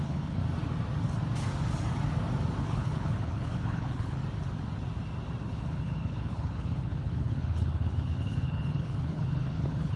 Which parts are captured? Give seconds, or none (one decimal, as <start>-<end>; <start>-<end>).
0.4-2.6; 4.2-5.5